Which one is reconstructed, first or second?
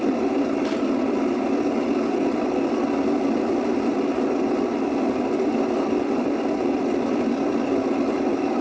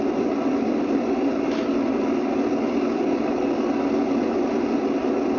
first